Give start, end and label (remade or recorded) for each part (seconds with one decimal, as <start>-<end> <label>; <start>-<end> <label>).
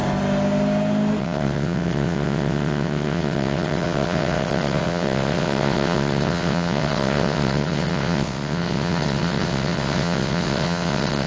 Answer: 0.0-1.2 recorded; 1.2-11.3 remade